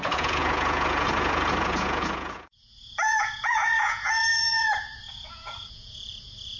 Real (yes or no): no